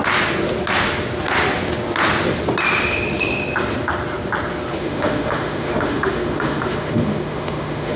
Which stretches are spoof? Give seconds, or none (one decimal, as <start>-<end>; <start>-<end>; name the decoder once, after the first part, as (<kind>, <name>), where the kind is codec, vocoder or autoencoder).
4.8-8.0 (autoencoder, DAC-VAE)